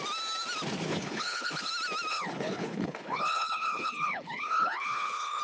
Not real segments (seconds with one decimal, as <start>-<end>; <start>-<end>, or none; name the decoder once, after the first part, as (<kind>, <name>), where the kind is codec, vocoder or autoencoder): 0.9-1.7 (codec, HILCodec); 2.1-5.4

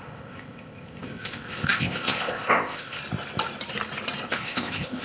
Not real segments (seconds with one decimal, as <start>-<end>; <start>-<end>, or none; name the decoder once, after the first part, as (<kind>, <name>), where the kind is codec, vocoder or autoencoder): 0.0-3.0 (codec, ZipCodec); 4.3-5.0

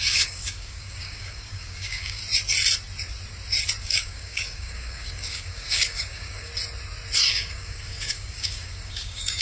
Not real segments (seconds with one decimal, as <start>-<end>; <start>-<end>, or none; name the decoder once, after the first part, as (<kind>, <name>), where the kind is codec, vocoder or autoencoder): 0.0-2.2 (codec, DAC); 3.8-6.5; 7.3-9.4

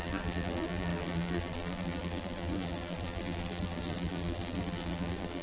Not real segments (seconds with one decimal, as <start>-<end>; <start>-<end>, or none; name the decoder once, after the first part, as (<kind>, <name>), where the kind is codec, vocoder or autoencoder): 0.0-5.4 (vocoder, BigVGAN v2)

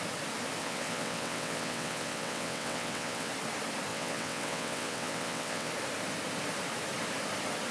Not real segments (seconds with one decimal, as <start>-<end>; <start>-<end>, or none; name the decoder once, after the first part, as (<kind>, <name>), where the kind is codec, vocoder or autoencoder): 0.6-3.3 (vocoder, WaveNeXt); 3.9-5.7

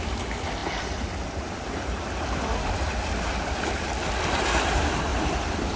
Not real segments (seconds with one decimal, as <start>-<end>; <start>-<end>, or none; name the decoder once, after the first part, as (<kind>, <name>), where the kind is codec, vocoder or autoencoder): 0.0-5.1 (vocoder, BigVGAN v2)